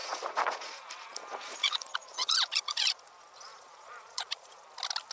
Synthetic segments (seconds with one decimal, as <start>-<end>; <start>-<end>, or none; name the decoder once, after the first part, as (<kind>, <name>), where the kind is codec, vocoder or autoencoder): 0.0-3.1 (vocoder, Vocos); 3.5-4.6